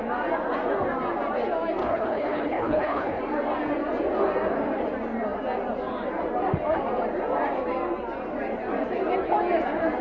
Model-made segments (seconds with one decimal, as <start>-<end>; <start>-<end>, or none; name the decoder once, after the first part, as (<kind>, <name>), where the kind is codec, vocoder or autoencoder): 1.8-3.2 (codec, HILCodec)